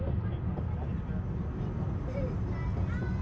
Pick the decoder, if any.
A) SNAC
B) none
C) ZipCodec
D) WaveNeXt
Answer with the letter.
B